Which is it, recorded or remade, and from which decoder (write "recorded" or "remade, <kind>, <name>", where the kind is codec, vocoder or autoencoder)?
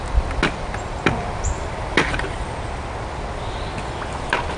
recorded